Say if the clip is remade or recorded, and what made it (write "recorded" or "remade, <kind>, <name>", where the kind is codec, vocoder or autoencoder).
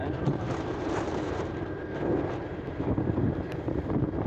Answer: remade, vocoder, BigVGAN v2